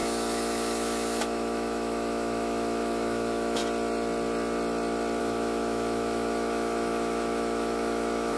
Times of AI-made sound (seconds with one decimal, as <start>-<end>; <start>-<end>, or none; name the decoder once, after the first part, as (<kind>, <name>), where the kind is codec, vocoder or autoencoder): 0.0-3.6 (autoencoder, DAC-VAE); 5.2-8.4